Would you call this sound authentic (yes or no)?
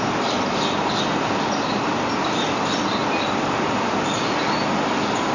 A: yes